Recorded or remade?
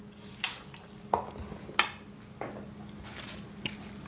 recorded